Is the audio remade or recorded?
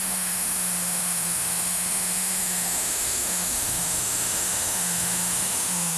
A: remade